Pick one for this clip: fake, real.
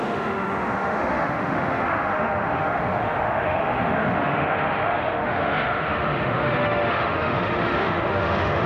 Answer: fake